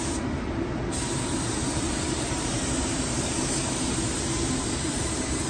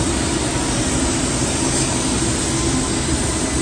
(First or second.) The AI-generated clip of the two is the first